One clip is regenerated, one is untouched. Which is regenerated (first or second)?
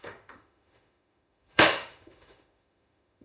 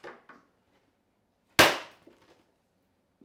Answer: first